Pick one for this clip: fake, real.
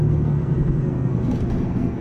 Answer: fake